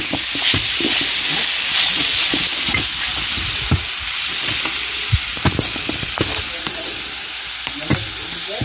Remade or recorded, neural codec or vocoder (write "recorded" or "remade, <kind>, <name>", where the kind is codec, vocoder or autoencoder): recorded